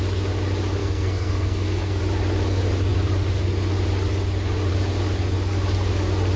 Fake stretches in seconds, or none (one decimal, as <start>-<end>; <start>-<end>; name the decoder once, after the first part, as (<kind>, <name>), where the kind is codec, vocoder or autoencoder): 0.8-2.0 (codec, SNAC)